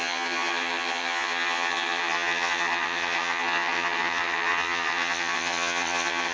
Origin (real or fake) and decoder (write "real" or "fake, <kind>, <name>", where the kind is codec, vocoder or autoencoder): fake, vocoder, HiFi-GAN